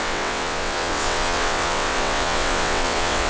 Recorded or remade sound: remade